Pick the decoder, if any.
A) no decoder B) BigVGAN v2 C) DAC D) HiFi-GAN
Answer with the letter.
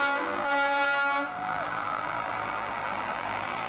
B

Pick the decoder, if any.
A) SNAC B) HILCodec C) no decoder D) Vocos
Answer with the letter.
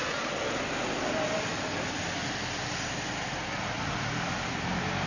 C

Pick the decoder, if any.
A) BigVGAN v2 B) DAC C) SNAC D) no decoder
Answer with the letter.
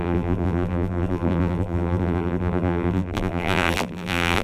A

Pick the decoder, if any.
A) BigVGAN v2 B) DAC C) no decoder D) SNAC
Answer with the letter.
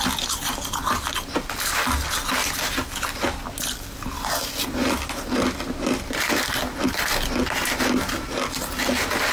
C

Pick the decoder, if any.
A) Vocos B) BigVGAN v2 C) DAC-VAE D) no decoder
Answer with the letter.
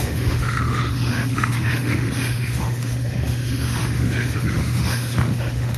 C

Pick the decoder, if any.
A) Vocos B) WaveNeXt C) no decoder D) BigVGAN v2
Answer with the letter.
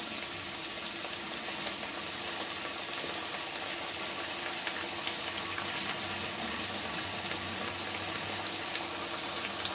C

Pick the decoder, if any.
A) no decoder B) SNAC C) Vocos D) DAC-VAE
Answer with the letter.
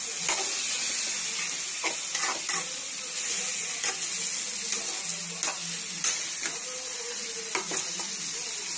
A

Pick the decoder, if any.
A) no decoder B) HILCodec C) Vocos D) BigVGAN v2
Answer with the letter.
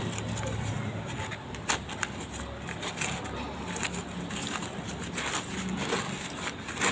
A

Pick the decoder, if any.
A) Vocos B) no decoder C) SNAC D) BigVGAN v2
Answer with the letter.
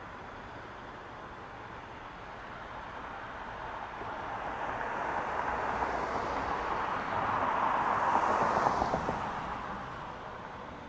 B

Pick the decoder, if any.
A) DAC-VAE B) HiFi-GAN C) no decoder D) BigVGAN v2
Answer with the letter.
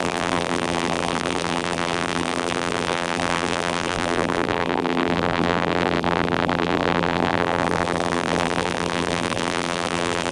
D